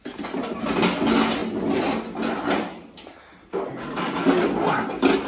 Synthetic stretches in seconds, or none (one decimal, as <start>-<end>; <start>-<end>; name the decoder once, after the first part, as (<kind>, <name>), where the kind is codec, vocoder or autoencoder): none